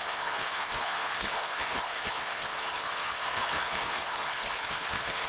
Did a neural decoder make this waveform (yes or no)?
yes